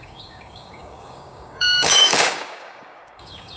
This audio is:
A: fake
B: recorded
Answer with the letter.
A